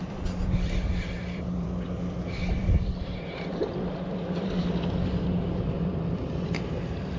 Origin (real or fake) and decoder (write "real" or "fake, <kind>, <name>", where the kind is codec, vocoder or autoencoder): fake, vocoder, BigVGAN v2